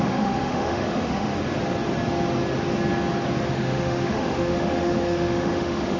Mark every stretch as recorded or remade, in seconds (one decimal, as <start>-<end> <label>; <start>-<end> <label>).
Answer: 0.0-1.3 remade; 1.3-3.5 recorded; 3.5-6.0 remade